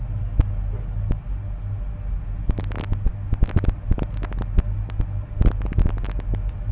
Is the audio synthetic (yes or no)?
no